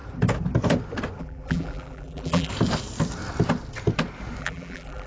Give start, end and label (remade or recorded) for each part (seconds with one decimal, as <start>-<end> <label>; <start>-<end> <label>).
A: 0.0-1.2 recorded; 1.2-2.5 remade; 2.5-4.4 recorded; 4.4-5.1 remade